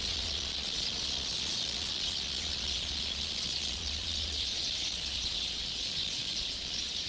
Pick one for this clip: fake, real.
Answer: fake